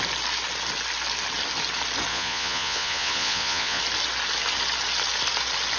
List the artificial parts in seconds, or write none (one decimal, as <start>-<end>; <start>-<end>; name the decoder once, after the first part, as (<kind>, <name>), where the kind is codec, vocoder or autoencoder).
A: 2.1-3.8 (vocoder, Vocos)